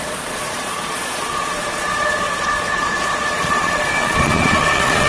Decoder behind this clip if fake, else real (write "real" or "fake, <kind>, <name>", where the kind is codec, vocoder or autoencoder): fake, vocoder, Vocos